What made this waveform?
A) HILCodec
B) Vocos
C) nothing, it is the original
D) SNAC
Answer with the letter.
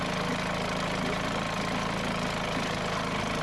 C